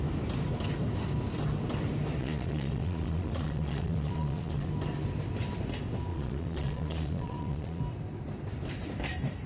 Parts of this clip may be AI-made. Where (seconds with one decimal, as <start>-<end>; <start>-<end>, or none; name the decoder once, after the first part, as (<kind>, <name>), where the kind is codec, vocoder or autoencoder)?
2.2-4.7 (vocoder, Vocos); 6.1-7.8